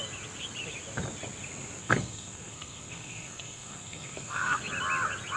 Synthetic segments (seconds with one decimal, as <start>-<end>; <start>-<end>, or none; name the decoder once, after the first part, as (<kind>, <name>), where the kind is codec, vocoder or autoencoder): 1.8-4.6 (codec, SNAC)